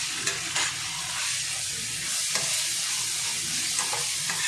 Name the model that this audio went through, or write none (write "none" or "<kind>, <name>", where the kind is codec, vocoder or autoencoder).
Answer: none